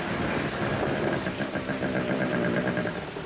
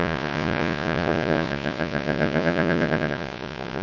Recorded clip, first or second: first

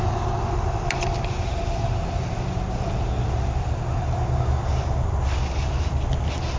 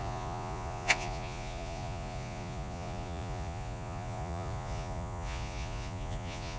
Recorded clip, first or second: first